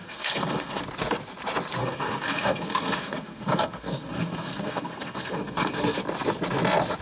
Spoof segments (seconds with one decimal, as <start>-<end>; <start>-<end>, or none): 0.0-0.8; 1.8-6.0